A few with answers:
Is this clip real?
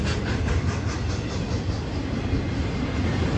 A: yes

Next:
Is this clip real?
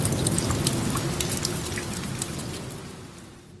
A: yes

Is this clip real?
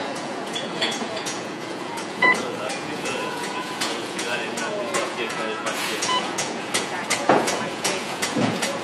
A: no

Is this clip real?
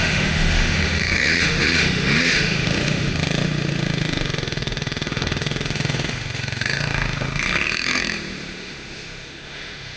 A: no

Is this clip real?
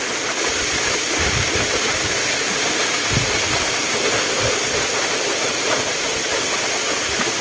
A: yes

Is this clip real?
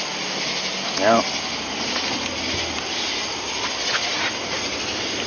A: yes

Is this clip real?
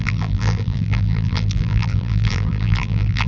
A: no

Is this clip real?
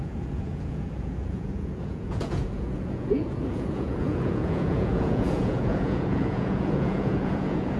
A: no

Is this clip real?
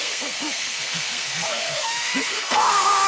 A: no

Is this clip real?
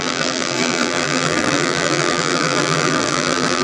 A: no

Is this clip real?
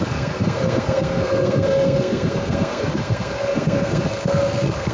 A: no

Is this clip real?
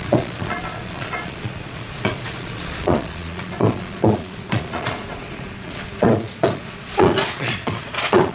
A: no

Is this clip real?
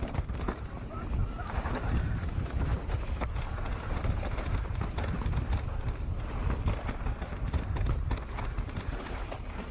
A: yes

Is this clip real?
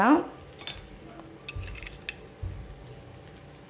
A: yes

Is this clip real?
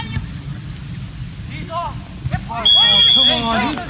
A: yes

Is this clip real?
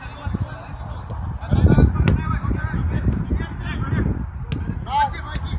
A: yes